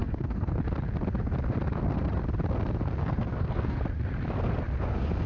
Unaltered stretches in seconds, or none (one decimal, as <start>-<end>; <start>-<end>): 0.6-3.0; 3.8-5.3